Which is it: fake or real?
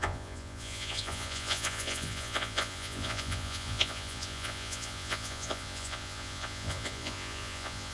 fake